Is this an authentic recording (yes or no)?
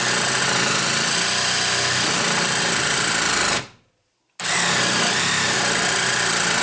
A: yes